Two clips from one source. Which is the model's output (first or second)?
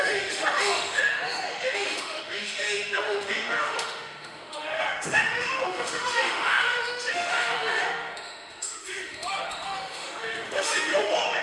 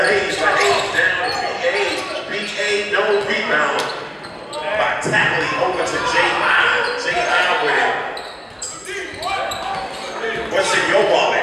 first